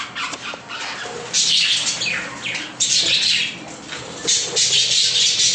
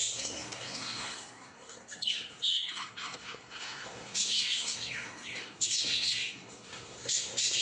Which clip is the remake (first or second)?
second